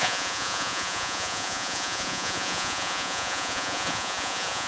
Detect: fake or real fake